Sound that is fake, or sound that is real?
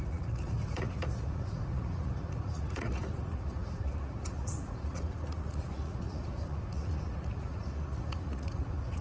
fake